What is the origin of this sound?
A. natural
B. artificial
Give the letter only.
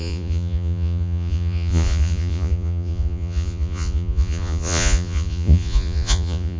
B